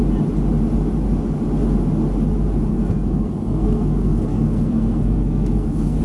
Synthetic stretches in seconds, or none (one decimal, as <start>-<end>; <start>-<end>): 2.7-6.0